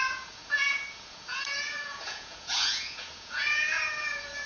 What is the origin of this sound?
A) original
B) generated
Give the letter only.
B